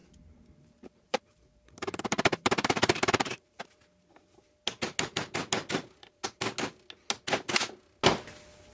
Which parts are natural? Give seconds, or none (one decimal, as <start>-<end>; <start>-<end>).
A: 3.6-8.7